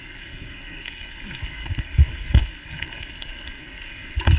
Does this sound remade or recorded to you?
remade